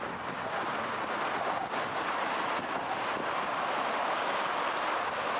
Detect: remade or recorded recorded